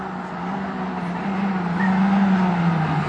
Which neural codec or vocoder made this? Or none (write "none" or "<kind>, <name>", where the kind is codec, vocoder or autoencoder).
none